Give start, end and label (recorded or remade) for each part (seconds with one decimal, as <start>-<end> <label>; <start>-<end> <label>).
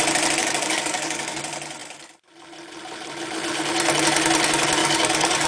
0.0-0.4 recorded; 0.4-1.4 remade; 1.4-4.8 recorded; 4.8-5.5 remade